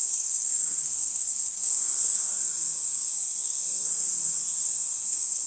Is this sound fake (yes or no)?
yes